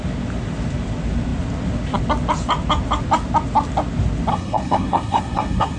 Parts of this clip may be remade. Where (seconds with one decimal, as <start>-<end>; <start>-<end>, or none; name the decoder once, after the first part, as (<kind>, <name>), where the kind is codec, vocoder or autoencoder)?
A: 4.3-5.8 (codec, SNAC)